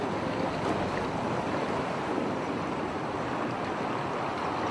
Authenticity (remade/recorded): recorded